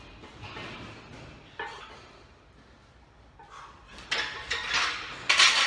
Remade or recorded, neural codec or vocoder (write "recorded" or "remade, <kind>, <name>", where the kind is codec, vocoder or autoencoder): recorded